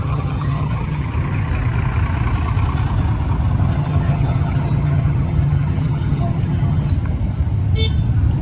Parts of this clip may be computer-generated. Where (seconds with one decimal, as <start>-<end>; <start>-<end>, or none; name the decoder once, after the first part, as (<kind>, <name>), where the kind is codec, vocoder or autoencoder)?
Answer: 0.0-1.1 (vocoder, HiFi-GAN); 3.7-6.9